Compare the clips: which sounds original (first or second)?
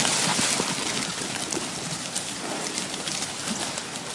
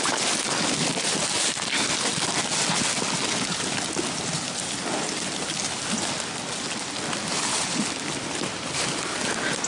second